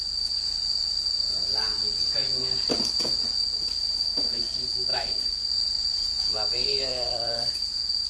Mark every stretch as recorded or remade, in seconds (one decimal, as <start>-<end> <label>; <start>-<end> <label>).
0.0-4.9 recorded; 4.9-5.7 remade; 5.7-6.9 recorded; 6.9-7.5 remade; 7.5-8.1 recorded